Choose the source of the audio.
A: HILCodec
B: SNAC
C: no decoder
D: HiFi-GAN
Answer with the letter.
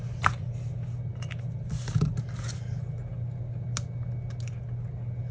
C